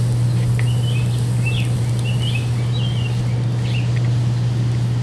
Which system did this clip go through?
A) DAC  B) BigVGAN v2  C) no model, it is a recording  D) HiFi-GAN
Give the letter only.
C